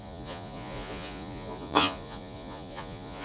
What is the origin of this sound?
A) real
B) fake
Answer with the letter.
B